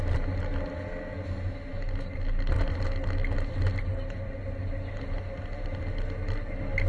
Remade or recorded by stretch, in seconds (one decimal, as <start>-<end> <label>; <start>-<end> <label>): 0.0-6.9 recorded